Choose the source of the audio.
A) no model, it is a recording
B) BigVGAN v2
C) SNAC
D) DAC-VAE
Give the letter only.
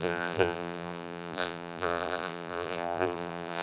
B